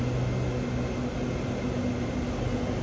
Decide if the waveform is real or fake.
real